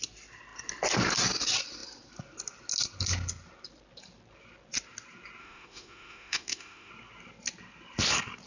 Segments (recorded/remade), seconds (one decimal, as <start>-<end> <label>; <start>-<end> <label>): 0.0-5.4 recorded; 5.4-6.9 remade; 6.9-8.5 recorded